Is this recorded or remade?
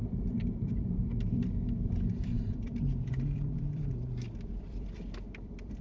remade